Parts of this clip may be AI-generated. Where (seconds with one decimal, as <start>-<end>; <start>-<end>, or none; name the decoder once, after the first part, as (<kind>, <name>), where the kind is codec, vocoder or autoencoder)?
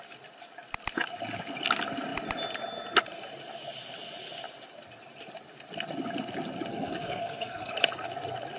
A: 6.7-7.7 (codec, SNAC)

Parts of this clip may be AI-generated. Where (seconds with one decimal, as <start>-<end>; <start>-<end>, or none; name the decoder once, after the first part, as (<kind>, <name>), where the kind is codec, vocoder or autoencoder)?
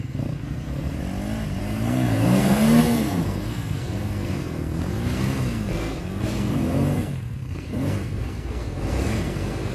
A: 0.0-1.0 (codec, SNAC); 1.6-9.7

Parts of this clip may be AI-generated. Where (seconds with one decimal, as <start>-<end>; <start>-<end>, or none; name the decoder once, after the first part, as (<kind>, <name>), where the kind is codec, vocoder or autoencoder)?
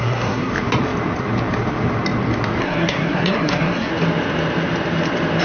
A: 0.0-0.5 (codec, SNAC); 2.6-3.9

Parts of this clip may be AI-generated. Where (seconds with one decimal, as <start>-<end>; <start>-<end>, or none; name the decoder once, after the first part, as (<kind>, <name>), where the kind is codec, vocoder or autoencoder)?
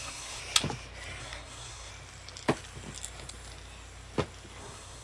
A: 0.0-0.4 (codec, SNAC); 1.2-1.9; 4.6-5.0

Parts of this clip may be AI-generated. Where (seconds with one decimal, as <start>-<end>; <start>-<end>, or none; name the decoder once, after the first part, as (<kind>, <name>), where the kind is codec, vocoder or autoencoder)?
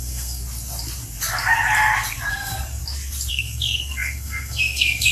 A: 0.0-0.4 (codec, SNAC); 2.3-2.8; 3.3-5.1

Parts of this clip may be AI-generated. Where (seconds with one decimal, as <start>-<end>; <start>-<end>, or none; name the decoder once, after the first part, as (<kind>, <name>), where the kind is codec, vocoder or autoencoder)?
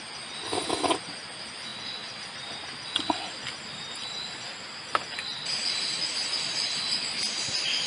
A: none